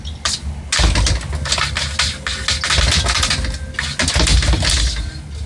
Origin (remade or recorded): recorded